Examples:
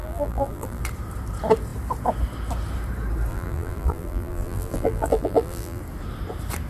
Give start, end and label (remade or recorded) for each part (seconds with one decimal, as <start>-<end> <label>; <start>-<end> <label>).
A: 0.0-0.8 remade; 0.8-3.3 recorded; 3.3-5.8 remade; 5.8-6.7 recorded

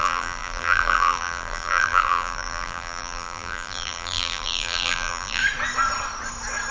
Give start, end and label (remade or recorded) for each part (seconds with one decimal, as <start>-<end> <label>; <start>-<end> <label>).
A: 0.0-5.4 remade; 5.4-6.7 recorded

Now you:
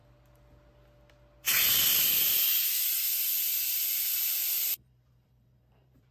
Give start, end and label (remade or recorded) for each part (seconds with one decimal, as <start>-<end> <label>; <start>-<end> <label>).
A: 0.0-3.7 recorded; 3.7-6.1 remade

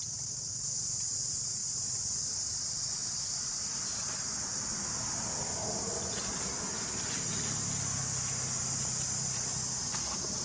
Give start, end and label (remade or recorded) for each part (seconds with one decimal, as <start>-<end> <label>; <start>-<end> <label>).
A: 0.0-3.0 remade; 3.0-3.6 recorded; 3.6-4.5 remade; 4.5-8.7 recorded; 8.7-10.4 remade

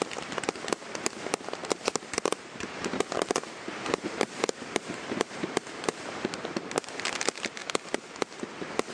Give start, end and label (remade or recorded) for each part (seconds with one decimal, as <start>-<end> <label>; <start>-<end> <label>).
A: 0.0-1.6 recorded; 1.6-6.7 remade; 6.7-8.9 recorded

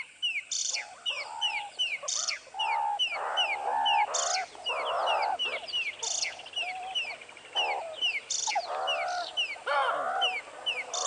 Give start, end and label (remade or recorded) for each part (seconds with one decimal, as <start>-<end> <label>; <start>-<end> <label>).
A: 0.0-0.6 recorded; 0.6-2.6 remade; 2.6-11.1 recorded